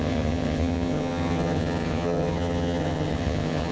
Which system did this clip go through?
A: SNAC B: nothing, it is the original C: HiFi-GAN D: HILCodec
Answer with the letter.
C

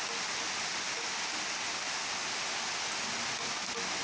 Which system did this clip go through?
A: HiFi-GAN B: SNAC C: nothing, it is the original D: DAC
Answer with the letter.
C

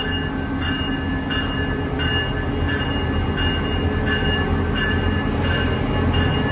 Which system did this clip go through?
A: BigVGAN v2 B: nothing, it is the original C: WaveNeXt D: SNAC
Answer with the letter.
B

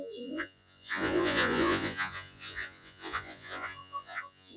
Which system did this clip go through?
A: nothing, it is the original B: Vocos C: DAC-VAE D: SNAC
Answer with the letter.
B